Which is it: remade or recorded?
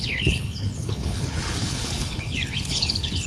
remade